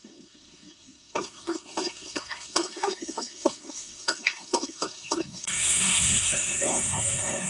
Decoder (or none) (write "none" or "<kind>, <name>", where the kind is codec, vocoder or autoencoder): codec, SNAC